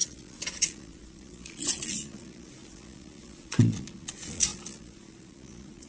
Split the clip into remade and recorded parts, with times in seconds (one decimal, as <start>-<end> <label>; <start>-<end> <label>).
0.0-5.9 remade